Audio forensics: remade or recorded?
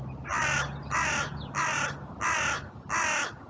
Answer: recorded